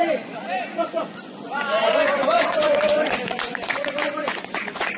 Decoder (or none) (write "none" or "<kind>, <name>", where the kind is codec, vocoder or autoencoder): vocoder, Vocos